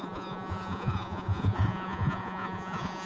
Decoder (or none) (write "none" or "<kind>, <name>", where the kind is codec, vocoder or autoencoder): vocoder, Vocos